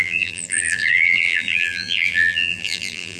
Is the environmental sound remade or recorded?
remade